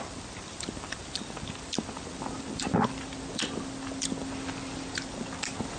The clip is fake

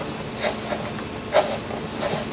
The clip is real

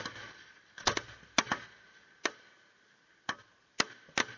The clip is real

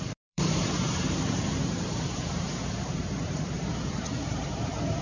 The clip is fake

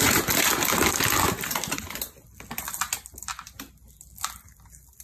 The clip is real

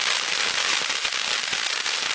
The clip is real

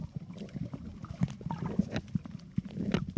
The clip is real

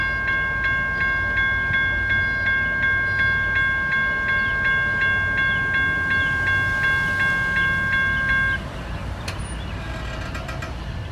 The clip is real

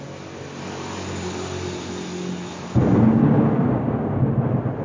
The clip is real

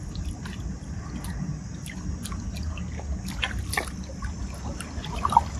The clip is real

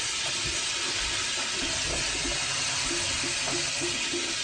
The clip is fake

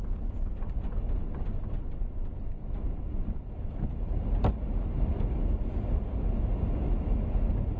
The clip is fake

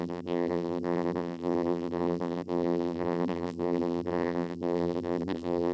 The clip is fake